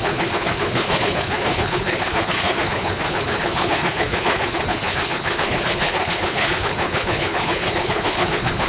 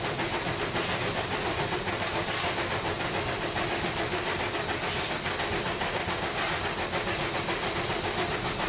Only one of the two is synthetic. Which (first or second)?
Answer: first